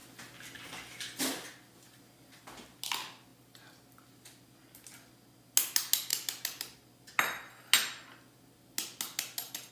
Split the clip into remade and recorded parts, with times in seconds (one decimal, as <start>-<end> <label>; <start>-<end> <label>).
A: 0.0-9.7 recorded